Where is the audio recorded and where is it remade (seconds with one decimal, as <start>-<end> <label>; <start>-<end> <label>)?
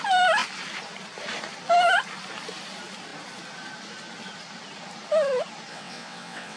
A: 0.0-5.7 recorded; 5.7-6.6 remade